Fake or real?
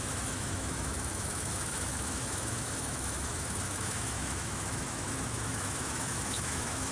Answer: fake